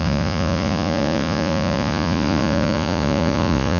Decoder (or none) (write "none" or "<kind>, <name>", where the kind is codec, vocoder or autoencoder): vocoder, Vocos